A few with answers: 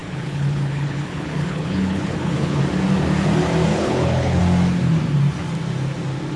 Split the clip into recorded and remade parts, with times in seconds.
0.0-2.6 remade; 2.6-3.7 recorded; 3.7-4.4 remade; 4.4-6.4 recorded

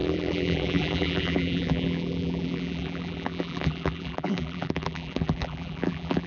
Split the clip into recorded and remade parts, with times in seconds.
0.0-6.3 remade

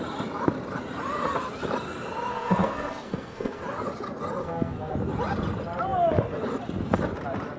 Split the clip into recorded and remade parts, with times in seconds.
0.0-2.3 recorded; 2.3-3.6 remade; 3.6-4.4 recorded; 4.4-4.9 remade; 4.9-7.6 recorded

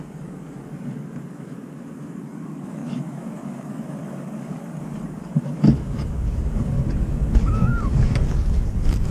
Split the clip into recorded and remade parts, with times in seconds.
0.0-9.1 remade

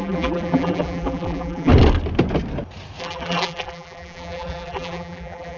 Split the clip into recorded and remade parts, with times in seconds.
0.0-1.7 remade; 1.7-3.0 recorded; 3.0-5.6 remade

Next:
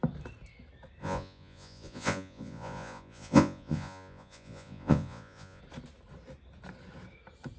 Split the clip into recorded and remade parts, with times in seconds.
0.0-1.0 recorded; 1.0-5.6 remade; 5.6-7.6 recorded

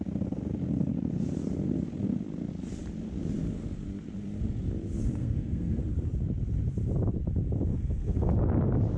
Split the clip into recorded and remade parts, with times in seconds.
0.0-5.2 recorded; 5.2-5.8 remade; 5.8-7.7 recorded; 7.7-8.3 remade; 8.3-9.0 recorded

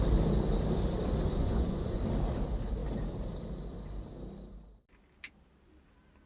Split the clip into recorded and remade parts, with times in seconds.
0.0-1.4 recorded; 1.4-2.0 remade; 2.0-6.3 recorded